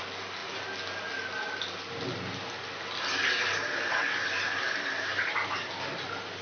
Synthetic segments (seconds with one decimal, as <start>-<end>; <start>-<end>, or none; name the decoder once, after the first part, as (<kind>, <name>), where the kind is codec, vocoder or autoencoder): none